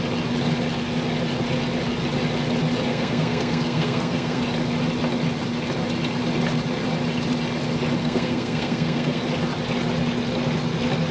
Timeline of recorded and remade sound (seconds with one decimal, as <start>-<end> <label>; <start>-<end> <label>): 0.0-2.9 recorded; 2.9-4.4 remade; 4.4-8.0 recorded; 8.0-9.2 remade; 9.2-11.1 recorded